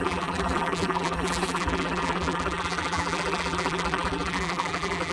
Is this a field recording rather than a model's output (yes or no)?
no